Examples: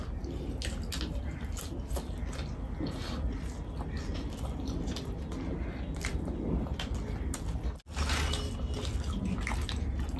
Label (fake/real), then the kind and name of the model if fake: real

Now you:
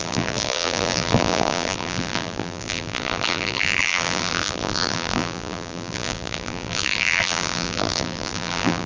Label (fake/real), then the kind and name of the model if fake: fake, vocoder, BigVGAN v2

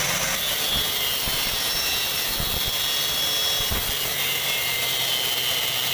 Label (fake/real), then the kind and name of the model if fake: real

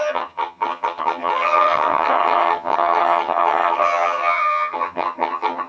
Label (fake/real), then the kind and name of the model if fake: fake, vocoder, HiFi-GAN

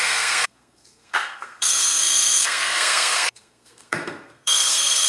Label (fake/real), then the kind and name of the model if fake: fake, codec, SNAC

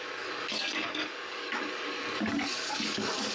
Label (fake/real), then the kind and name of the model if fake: fake, codec, DAC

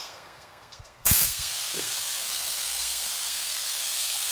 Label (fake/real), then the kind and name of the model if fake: fake, codec, SNAC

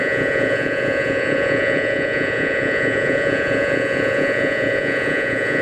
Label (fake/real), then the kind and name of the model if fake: fake, vocoder, Vocos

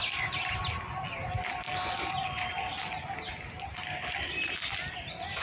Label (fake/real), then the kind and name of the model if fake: real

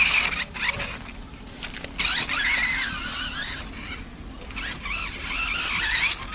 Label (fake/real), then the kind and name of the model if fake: real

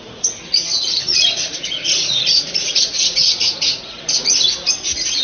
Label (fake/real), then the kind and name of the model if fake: fake, vocoder, Vocos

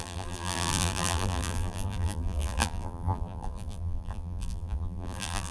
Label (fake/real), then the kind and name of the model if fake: fake, vocoder, BigVGAN v2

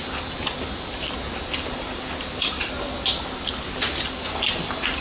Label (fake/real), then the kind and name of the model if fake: real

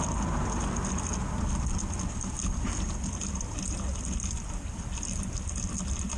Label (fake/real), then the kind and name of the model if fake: real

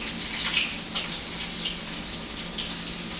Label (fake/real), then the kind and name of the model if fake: real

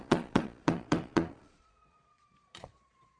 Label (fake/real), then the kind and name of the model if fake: fake, vocoder, Vocos